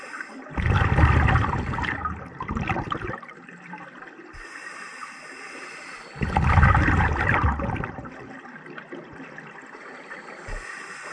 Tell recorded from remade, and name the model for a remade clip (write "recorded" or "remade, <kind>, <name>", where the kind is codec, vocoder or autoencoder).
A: recorded